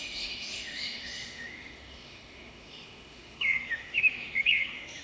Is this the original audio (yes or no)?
no